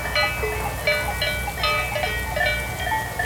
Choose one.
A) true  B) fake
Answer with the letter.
A